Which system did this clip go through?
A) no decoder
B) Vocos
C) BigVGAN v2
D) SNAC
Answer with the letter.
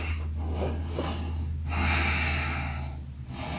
A